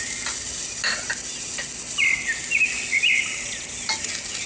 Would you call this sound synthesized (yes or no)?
no